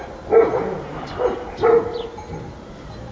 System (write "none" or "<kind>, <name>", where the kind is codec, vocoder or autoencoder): none